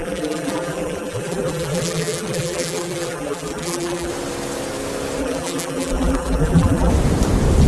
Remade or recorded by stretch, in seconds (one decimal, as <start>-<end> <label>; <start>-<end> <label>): 0.0-4.1 remade; 4.1-5.2 recorded; 5.2-6.9 remade; 6.9-7.7 recorded